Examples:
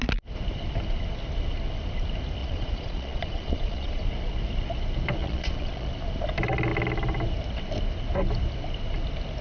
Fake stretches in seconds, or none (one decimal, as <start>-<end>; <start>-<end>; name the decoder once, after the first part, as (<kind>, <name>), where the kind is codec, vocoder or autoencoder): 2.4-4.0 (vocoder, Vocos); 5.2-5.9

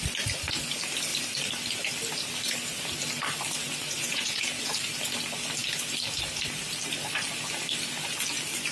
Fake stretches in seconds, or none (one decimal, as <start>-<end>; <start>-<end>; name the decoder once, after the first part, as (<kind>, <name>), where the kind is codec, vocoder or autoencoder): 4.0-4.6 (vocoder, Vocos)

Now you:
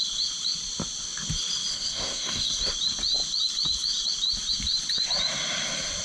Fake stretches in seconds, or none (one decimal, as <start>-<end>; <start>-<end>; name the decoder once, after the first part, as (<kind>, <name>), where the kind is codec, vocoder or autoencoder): 1.7-2.6 (codec, SNAC)

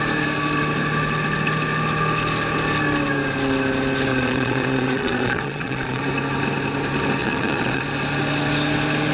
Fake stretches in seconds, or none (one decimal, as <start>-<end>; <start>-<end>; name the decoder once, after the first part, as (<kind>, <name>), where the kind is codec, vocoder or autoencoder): 4.1-6.0 (vocoder, Vocos); 7.2-7.8

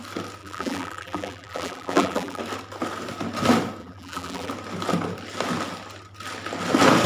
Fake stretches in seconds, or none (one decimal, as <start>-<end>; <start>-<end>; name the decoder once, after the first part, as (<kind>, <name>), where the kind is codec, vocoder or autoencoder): 0.4-2.4 (vocoder, BigVGAN v2); 3.8-4.5

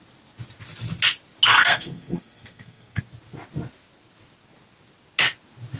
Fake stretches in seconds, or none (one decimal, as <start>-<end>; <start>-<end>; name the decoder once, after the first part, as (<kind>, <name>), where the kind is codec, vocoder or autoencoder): 1.5-3.0 (codec, SNAC)